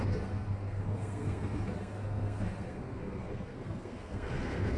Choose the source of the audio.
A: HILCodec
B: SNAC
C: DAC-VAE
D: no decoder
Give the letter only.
B